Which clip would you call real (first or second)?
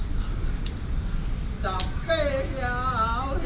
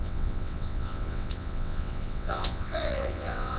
first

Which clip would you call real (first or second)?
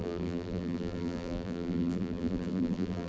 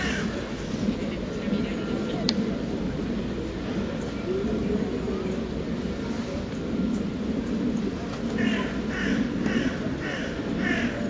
second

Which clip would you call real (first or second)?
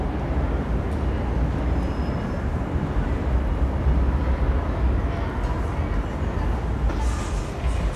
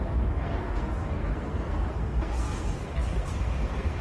first